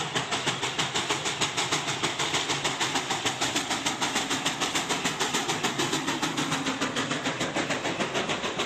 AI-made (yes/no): no